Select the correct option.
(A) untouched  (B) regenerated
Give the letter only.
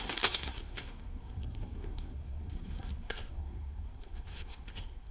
B